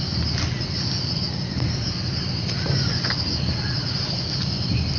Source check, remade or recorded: recorded